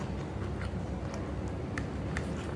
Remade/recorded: recorded